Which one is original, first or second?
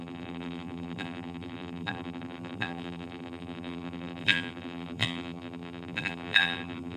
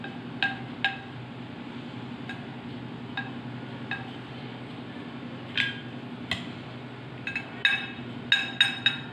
second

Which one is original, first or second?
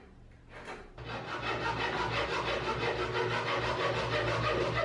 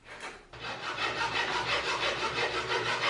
first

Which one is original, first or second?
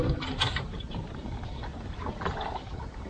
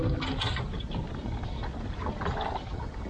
second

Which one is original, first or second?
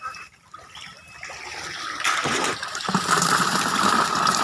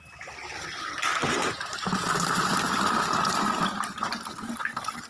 second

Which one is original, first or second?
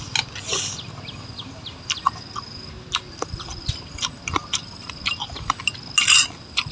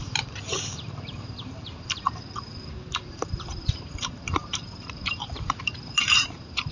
first